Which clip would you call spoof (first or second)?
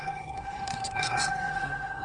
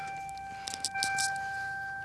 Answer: first